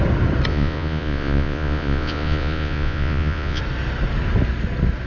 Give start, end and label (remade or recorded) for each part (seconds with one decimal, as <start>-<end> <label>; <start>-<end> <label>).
0.0-0.5 recorded; 0.5-3.6 remade; 3.6-5.1 recorded